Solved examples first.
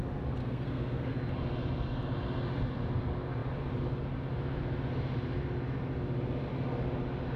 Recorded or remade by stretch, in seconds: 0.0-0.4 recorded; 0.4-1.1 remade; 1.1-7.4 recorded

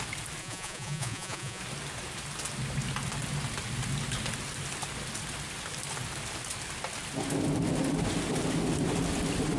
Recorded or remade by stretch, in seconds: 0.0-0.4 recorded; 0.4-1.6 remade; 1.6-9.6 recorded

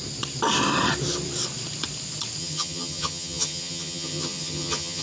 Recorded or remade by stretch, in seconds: 0.0-2.4 recorded; 2.4-5.0 remade

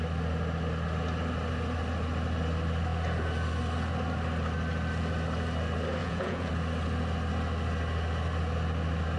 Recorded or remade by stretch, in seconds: 0.0-6.0 recorded; 6.0-6.5 remade; 6.5-9.2 recorded